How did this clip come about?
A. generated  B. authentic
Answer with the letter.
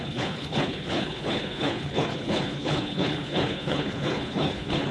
A